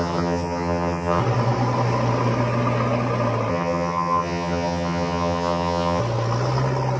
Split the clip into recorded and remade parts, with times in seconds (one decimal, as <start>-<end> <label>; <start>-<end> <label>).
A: 0.0-1.2 remade; 1.2-3.5 recorded; 3.5-6.0 remade; 6.0-7.0 recorded